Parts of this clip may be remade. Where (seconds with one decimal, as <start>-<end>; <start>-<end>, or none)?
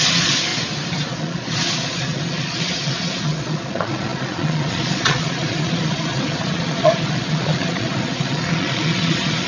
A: 0.0-0.5; 1.1-9.5